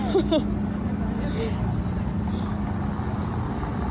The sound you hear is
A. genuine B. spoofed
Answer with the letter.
A